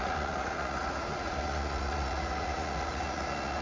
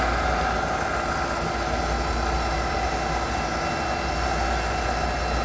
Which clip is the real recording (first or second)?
second